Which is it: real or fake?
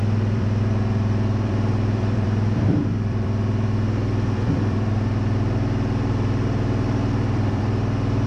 fake